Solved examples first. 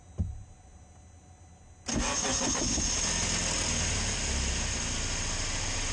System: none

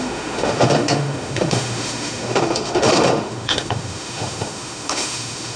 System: autoencoder, DAC-VAE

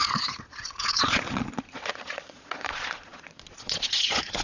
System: vocoder, Vocos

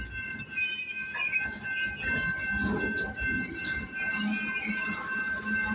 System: none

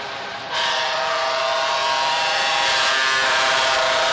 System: vocoder, BigVGAN v2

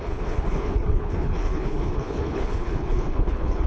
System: codec, HILCodec